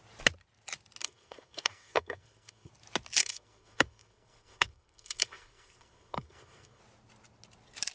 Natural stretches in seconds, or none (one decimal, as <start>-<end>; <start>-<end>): 0.0-1.0; 2.7-3.2; 6.8-7.9